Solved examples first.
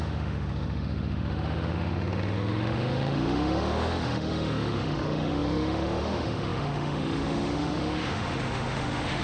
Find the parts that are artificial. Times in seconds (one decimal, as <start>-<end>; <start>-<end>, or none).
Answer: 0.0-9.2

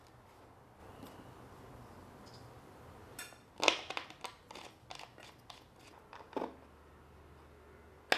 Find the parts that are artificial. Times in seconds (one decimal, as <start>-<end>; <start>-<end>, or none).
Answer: none

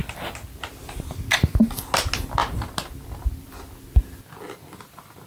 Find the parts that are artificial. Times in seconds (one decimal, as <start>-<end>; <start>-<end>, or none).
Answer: none